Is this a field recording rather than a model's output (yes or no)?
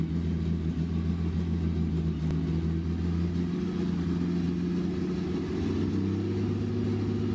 yes